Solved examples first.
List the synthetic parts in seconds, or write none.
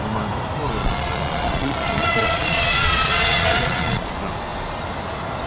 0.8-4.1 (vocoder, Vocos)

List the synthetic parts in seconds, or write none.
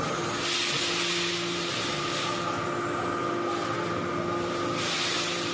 none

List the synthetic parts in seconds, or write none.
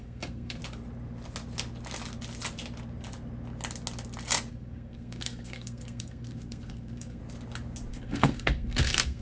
0.0-0.6 (codec, SNAC); 4.5-7.2; 7.9-9.2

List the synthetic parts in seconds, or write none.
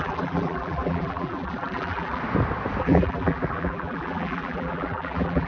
0.0-2.2 (vocoder, BigVGAN v2); 2.8-5.5